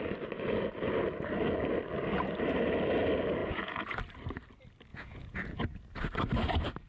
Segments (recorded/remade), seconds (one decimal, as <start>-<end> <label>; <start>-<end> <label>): 0.0-3.4 recorded; 3.4-4.0 remade; 4.0-4.9 recorded; 4.9-5.6 remade; 5.6-6.9 recorded